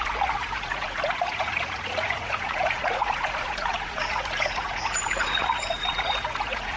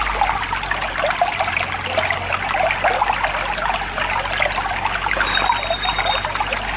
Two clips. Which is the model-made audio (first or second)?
first